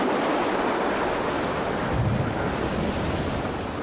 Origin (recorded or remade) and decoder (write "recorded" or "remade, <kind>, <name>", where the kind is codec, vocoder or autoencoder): recorded